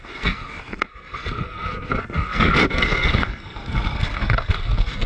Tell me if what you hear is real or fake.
fake